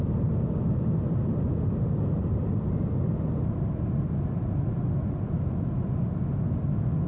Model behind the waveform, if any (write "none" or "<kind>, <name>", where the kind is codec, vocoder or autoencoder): none